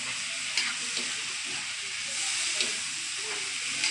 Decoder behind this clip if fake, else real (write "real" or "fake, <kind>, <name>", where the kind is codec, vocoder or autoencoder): real